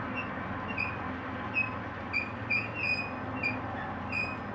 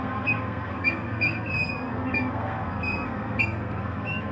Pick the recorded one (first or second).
first